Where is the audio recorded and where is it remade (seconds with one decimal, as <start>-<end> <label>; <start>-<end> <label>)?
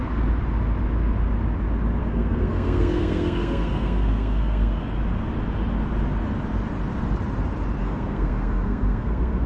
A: 0.0-2.0 recorded; 2.0-4.8 remade; 4.8-7.8 recorded; 7.8-9.5 remade